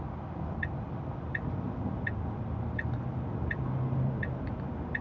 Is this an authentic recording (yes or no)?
yes